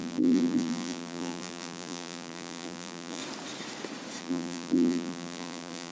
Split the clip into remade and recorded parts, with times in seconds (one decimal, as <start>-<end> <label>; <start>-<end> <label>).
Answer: 0.0-3.2 remade; 3.2-4.2 recorded; 4.2-5.9 remade

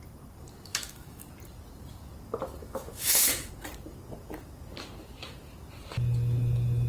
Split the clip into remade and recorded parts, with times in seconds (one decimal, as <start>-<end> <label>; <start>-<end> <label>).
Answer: 0.0-0.7 recorded; 0.7-1.2 remade; 1.2-2.6 recorded; 2.6-3.5 remade; 3.5-6.9 recorded

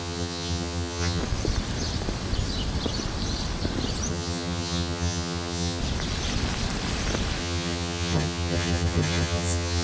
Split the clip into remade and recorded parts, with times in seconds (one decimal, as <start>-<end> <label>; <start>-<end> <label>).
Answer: 0.0-1.2 remade; 1.2-4.1 recorded; 4.1-5.8 remade; 5.8-7.4 recorded; 7.4-9.8 remade

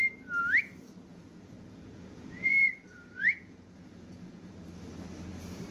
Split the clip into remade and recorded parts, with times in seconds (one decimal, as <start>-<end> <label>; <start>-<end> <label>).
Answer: 0.0-1.1 recorded; 1.1-4.5 remade; 4.5-5.7 recorded

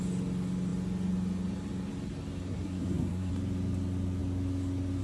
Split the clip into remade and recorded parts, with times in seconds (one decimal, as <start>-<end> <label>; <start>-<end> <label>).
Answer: 0.0-2.5 recorded; 2.5-3.3 remade; 3.3-5.0 recorded

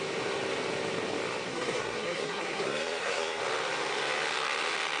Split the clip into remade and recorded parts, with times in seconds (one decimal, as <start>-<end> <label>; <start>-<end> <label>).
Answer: 0.0-1.5 recorded; 1.5-3.4 remade; 3.4-5.0 recorded

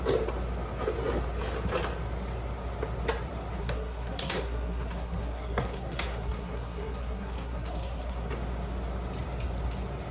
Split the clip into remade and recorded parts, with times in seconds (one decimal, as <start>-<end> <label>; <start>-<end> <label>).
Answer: 0.0-3.6 recorded; 3.6-8.3 remade; 8.3-10.1 recorded